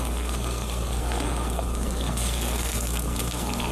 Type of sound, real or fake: fake